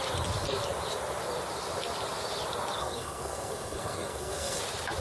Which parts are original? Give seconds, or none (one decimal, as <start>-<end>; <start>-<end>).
0.0-2.8; 4.6-5.0